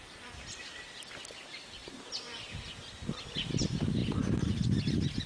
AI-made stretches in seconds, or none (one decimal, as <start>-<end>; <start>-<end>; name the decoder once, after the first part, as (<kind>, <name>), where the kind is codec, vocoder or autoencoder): none